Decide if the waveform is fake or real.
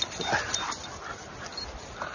real